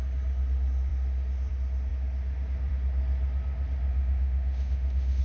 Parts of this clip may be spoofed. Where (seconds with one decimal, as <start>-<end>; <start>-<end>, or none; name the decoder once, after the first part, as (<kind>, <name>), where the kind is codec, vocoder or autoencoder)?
3.9-5.2 (autoencoder, DAC-VAE)